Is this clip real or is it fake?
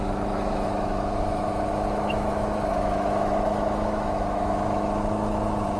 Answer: fake